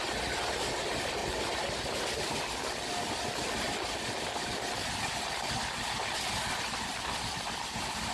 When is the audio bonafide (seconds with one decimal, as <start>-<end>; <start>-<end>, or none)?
0.0-8.1